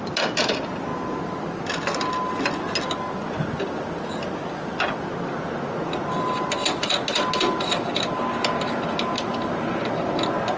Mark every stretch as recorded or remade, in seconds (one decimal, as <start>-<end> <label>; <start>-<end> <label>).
0.0-10.6 recorded